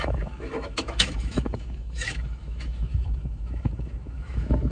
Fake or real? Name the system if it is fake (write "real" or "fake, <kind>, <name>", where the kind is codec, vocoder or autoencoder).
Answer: fake, autoencoder, DAC-VAE